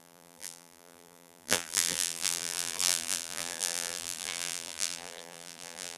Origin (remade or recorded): remade